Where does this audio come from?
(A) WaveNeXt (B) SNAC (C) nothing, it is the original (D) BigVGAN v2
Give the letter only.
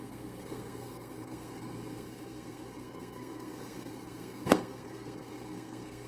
B